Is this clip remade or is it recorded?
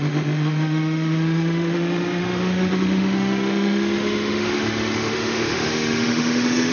remade